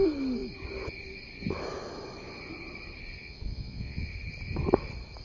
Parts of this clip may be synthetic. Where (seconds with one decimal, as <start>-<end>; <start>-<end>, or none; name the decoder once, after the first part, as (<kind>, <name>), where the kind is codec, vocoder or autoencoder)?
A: 3.2-4.1 (vocoder, Vocos)